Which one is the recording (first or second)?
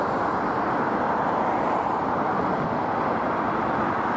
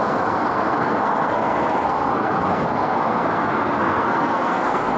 first